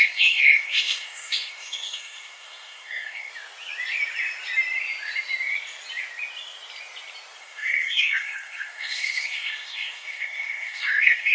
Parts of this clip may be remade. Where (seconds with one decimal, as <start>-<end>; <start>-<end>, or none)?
0.0-3.3; 7.4-11.3

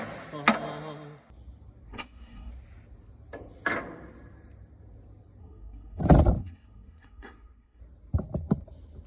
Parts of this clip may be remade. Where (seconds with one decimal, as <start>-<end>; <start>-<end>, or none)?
1.9-2.5; 5.4-6.0; 6.4-7.8

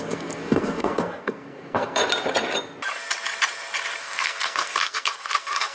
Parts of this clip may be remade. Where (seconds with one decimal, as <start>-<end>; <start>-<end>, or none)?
0.0-2.0; 4.0-5.7